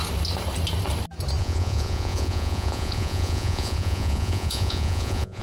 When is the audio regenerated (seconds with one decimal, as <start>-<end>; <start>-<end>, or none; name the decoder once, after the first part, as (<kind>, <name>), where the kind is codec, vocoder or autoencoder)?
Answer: 1.4-5.4 (vocoder, Vocos)